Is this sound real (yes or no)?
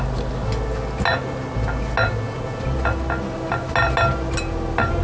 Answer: yes